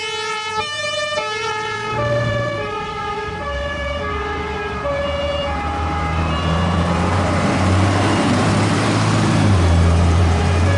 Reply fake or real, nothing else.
fake